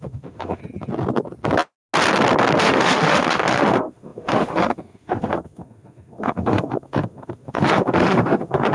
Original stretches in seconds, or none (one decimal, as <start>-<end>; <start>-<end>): 0.6-2.6